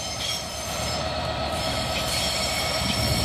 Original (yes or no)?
no